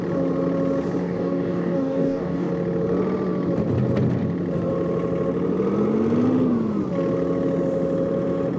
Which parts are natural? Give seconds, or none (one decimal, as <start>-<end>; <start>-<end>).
0.0-1.0; 2.5-8.6